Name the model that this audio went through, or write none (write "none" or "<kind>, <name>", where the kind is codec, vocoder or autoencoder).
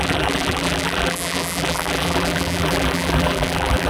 vocoder, BigVGAN v2